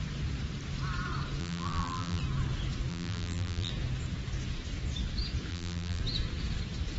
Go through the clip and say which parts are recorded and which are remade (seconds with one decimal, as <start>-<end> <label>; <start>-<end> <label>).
0.0-1.4 recorded; 1.4-2.2 remade; 2.2-2.9 recorded; 2.9-3.7 remade; 3.7-5.5 recorded; 5.5-6.0 remade; 6.0-7.0 recorded